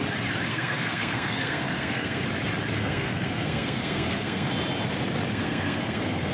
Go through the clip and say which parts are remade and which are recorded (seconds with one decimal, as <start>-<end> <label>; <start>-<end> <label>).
0.0-0.5 recorded; 0.5-2.2 remade; 2.2-2.8 recorded; 2.8-4.5 remade; 4.5-5.3 recorded; 5.3-6.3 remade